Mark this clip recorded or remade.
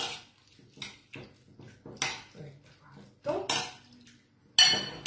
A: recorded